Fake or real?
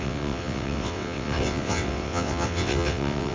fake